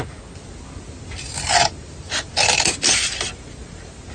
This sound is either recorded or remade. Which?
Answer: recorded